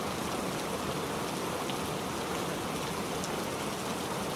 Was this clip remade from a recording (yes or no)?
no